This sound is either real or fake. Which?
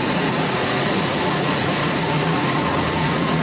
fake